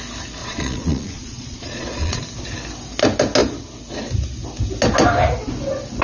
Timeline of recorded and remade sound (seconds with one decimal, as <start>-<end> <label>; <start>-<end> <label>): 0.0-0.4 recorded; 0.4-2.2 remade; 2.2-6.0 recorded